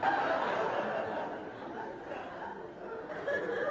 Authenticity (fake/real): real